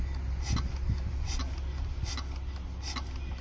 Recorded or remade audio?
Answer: recorded